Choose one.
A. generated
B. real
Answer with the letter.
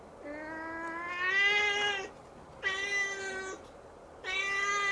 B